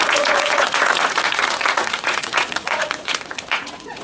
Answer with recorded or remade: remade